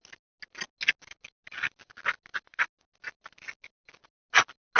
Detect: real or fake real